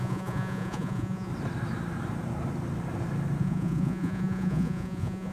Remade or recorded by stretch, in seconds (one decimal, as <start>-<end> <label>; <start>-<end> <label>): 0.0-1.3 remade; 1.3-3.4 recorded; 3.4-5.3 remade